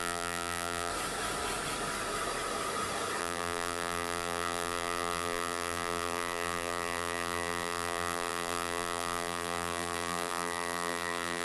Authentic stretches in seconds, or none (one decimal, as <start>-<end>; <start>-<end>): 0.9-3.2